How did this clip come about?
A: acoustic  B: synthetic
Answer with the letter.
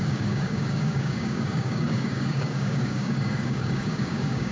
B